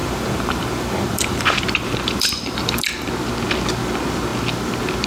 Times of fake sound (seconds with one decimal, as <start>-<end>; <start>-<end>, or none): 0.0-3.1

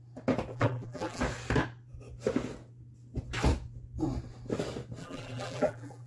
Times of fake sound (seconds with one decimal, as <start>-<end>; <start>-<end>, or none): 0.5-1.2; 5.0-6.1

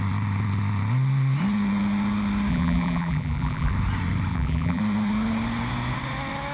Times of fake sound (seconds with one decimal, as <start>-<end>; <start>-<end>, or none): 2.5-3.7; 4.3-4.8

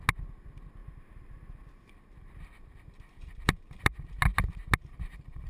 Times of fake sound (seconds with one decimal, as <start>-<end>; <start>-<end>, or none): 0.8-4.1; 4.8-5.5

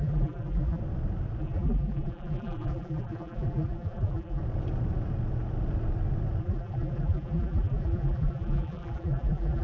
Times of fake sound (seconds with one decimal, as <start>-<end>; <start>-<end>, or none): 0.0-0.8; 1.4-4.4; 6.4-9.6